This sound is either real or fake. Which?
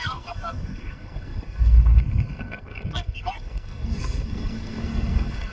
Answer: fake